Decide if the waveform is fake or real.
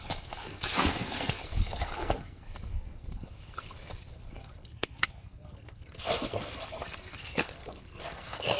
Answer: fake